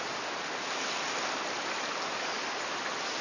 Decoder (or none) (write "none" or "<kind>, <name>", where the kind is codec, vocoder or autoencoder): none